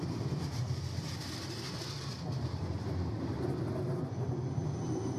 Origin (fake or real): real